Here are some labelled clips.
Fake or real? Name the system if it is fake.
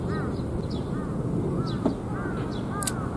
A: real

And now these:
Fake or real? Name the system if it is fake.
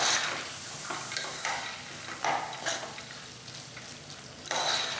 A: real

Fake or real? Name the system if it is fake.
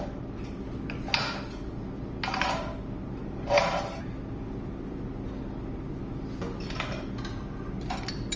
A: real